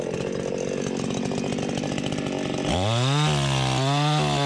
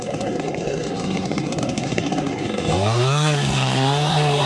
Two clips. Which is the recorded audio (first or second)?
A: first